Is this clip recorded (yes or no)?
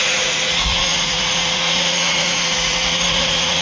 no